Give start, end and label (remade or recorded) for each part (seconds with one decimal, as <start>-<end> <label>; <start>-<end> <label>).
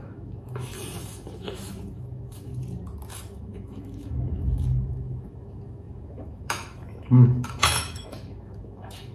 0.0-2.5 remade; 2.5-3.1 recorded; 3.1-9.1 remade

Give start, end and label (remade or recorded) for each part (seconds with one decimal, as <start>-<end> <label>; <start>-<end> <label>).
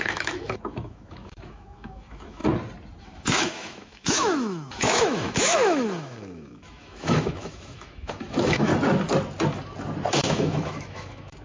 0.0-2.4 remade; 2.4-3.0 recorded; 3.0-8.7 remade; 8.7-10.1 recorded; 10.1-11.4 remade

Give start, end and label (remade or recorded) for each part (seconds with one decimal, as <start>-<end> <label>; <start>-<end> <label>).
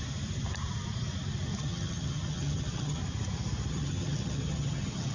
0.0-1.6 recorded; 1.6-3.0 remade; 3.0-3.7 recorded; 3.7-5.1 remade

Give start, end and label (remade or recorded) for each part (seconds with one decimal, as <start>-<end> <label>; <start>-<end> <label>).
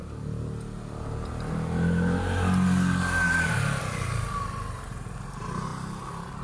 0.0-6.4 recorded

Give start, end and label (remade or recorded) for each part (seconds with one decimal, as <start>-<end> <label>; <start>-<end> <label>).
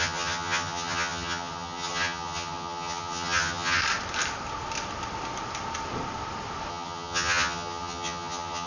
0.0-3.8 remade; 3.8-6.7 recorded; 6.7-8.7 remade